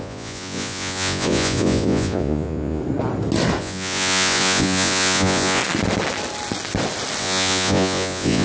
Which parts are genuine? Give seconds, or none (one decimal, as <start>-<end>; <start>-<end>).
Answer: 2.8-3.6; 5.6-7.2